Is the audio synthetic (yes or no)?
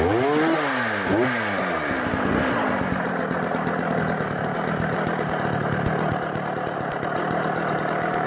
no